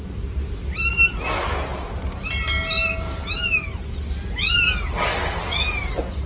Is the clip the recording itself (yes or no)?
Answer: yes